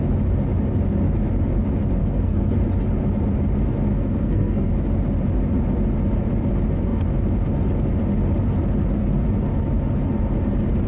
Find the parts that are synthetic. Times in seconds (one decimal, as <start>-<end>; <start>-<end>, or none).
2.0-2.6; 3.9-4.7